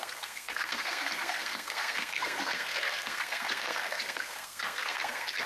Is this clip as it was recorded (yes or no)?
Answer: no